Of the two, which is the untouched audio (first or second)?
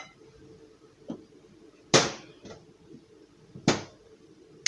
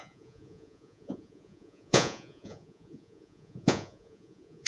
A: first